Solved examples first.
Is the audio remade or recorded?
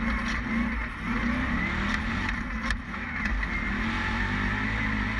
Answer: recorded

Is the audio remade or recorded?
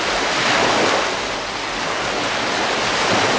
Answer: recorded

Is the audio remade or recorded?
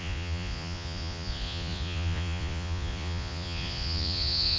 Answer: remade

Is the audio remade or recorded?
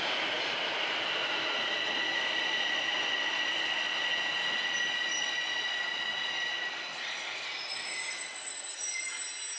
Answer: recorded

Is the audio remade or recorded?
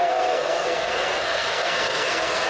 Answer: remade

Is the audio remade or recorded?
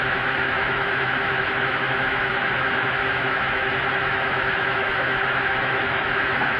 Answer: remade